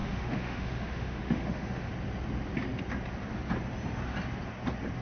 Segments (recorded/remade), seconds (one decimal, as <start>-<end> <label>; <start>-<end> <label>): 0.0-1.9 remade; 1.9-5.0 recorded